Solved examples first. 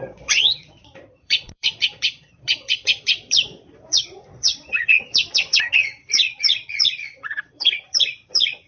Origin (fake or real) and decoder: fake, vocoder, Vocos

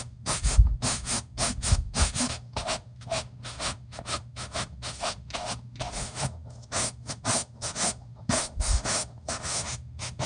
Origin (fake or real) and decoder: fake, autoencoder, DAC-VAE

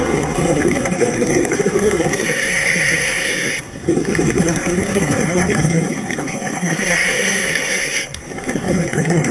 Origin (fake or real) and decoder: fake, codec, SNAC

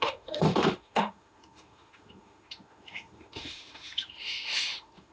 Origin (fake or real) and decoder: fake, autoencoder, DAC-VAE